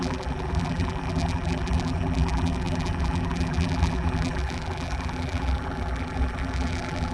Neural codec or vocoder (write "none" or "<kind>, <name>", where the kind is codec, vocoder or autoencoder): vocoder, BigVGAN v2